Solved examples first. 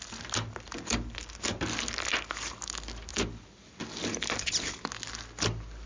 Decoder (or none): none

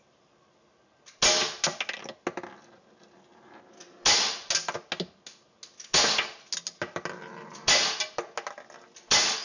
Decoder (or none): none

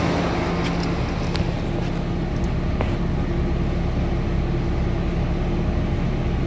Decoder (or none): none